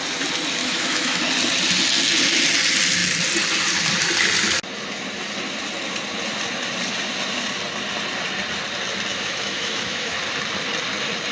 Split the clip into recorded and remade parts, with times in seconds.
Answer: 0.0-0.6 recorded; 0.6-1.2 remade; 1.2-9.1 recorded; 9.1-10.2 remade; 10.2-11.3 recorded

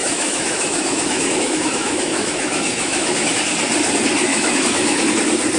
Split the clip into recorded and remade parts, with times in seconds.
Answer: 0.0-3.4 remade; 3.4-4.3 recorded; 4.3-5.1 remade; 5.1-5.6 recorded

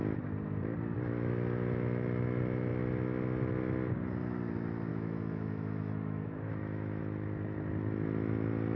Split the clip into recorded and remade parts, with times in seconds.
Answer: 0.0-4.9 recorded; 4.9-7.0 remade; 7.0-8.8 recorded

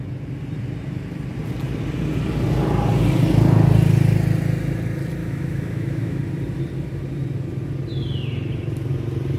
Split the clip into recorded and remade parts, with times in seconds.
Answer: 0.0-5.2 recorded; 5.2-6.2 remade; 6.2-9.4 recorded

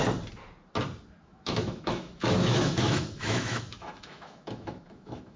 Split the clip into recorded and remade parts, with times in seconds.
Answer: 0.0-1.2 recorded; 1.2-5.4 remade

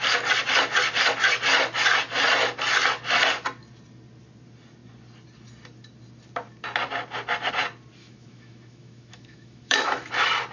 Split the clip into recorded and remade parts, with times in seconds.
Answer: 0.0-8.0 recorded; 8.0-10.1 remade; 10.1-10.5 recorded